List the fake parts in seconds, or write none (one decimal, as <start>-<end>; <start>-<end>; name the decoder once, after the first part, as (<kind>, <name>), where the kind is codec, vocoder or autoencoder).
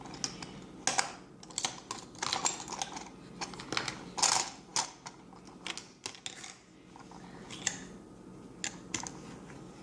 none